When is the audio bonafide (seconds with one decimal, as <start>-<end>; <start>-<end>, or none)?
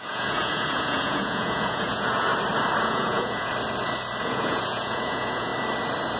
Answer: 2.3-2.8; 3.5-4.2; 5.5-6.2